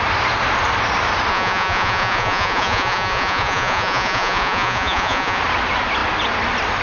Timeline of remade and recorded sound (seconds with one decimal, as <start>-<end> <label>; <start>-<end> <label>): 0.0-1.3 recorded; 1.3-5.4 remade; 5.4-6.8 recorded